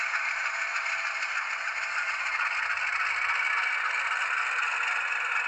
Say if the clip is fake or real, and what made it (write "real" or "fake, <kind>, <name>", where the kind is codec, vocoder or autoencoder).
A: real